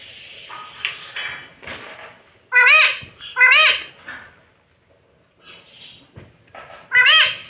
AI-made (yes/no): no